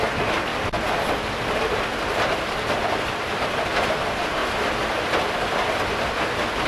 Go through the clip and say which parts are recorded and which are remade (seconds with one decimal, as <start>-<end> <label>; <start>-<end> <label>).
0.0-0.5 remade; 0.5-1.7 recorded; 1.7-4.4 remade; 4.4-6.7 recorded